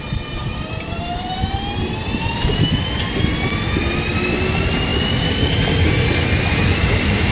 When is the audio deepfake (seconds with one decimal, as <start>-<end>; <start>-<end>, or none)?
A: 0.4-1.6